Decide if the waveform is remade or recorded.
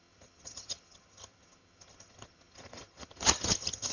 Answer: remade